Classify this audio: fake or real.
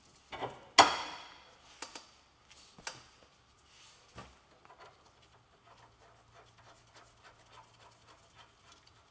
real